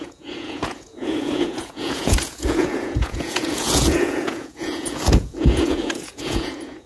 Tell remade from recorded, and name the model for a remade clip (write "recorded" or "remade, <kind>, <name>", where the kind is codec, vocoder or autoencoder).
remade, vocoder, Vocos